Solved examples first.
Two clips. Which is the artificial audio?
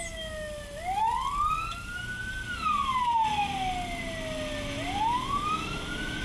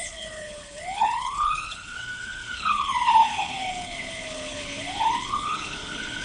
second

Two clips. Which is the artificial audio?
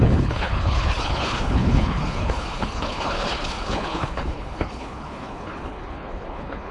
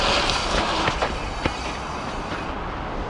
first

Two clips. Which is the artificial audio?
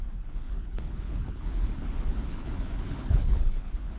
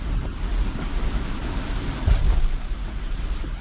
first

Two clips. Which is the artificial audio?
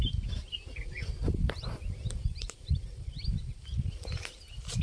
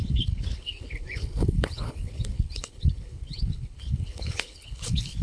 second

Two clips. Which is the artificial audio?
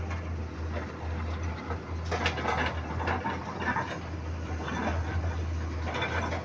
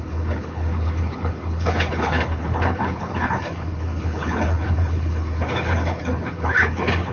second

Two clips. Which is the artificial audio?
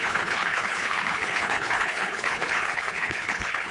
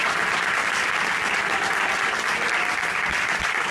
first